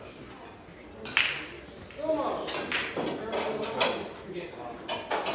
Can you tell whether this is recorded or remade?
recorded